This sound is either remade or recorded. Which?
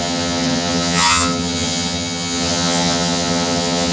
remade